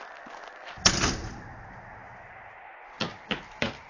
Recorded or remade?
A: remade